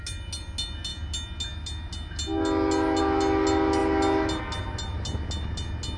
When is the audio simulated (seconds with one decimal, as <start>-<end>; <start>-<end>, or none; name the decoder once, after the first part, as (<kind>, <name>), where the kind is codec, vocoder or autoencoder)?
none